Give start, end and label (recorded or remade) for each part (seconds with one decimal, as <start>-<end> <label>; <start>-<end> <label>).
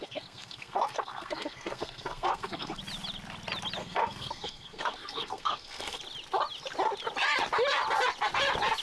0.0-2.8 remade; 2.8-3.8 recorded; 3.8-6.0 remade; 6.0-8.8 recorded